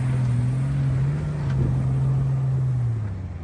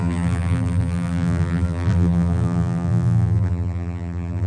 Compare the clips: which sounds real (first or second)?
first